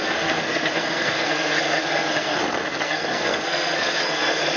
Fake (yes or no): yes